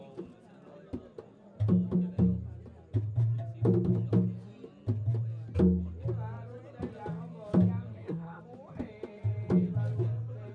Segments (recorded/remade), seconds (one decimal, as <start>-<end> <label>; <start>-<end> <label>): 0.0-7.9 recorded; 7.9-8.4 remade; 8.4-10.5 recorded